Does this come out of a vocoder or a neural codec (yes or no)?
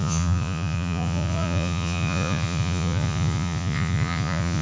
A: yes